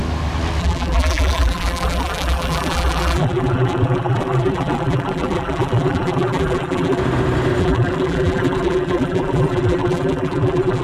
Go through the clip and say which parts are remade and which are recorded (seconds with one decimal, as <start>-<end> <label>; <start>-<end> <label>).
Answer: 0.0-0.6 recorded; 0.6-7.0 remade; 7.0-7.6 recorded; 7.6-10.8 remade